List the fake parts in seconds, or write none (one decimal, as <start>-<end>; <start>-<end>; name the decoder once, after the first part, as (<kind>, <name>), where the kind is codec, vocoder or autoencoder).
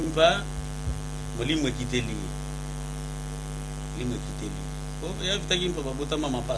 none